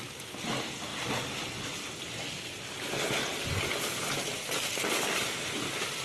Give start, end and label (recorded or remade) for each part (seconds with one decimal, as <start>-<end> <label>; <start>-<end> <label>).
0.0-6.0 recorded